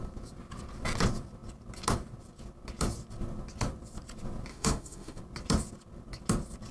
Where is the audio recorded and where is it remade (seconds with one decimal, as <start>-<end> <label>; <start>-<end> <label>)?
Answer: 0.0-4.5 recorded; 4.5-5.2 remade; 5.2-6.7 recorded

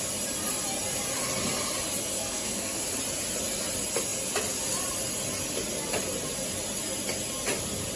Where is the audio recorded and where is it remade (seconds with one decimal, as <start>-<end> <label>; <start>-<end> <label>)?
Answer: 0.0-2.2 recorded; 2.2-2.8 remade; 2.8-8.0 recorded

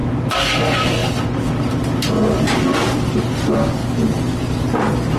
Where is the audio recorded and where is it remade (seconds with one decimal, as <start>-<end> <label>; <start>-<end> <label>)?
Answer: 0.0-5.2 recorded